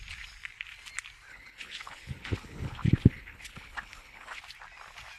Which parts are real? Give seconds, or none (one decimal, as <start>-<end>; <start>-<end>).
0.0-1.3; 4.4-5.2